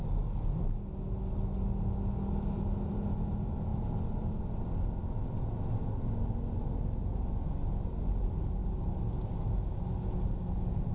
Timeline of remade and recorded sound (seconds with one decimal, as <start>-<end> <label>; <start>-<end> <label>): 0.0-10.9 recorded

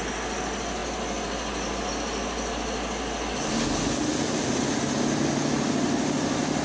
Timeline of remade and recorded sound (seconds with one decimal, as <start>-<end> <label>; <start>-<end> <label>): 0.0-6.6 recorded

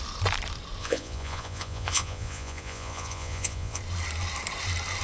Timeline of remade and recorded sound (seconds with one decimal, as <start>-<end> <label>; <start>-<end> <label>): 0.0-0.8 recorded; 0.8-3.8 remade; 3.8-5.0 recorded

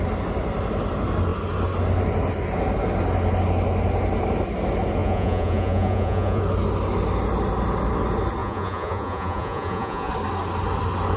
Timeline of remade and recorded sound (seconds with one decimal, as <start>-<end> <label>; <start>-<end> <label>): 0.0-5.0 recorded; 5.0-6.4 remade; 6.4-8.4 recorded; 8.4-10.1 remade; 10.1-11.2 recorded

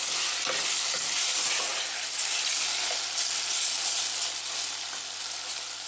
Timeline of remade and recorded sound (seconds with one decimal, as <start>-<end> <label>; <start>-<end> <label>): 0.0-5.9 recorded